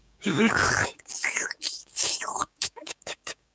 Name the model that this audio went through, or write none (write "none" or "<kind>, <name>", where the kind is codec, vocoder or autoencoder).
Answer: codec, DAC